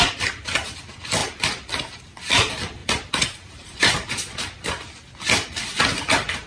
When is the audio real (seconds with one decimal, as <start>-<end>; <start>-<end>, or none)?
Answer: 0.0-1.2; 2.0-2.8; 3.8-6.5